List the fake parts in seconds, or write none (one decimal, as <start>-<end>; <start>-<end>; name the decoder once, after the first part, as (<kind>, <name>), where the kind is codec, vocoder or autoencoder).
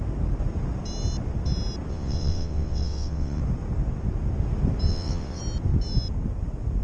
1.9-3.4 (vocoder, WaveNeXt); 4.9-5.4